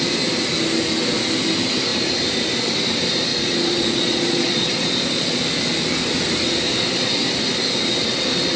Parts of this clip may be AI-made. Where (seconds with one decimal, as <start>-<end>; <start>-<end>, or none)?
3.3-5.4